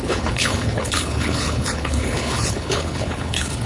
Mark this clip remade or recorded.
remade